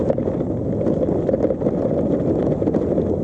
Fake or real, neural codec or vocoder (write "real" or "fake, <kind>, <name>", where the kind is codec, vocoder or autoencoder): real